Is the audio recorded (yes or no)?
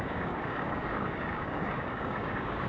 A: no